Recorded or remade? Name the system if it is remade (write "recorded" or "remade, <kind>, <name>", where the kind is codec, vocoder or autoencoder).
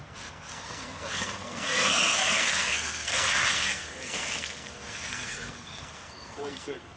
remade, codec, SNAC